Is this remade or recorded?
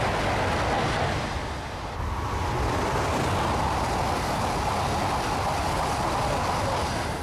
recorded